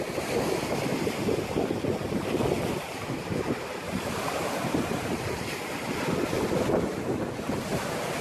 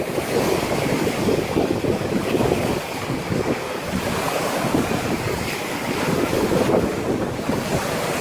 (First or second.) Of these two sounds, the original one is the first